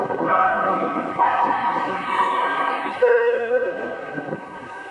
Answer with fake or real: fake